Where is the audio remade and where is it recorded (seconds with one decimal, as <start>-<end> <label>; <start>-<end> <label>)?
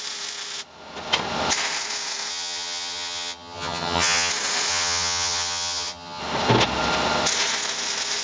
0.0-2.3 recorded; 2.3-4.3 remade; 4.3-4.7 recorded; 4.7-6.2 remade; 6.2-8.2 recorded